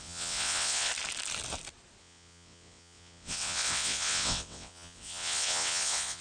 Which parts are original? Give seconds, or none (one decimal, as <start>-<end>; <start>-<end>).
0.9-2.0

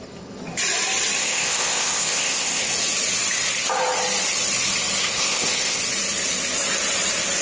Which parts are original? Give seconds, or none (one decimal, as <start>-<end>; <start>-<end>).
0.0-1.2; 2.7-5.0; 5.8-7.4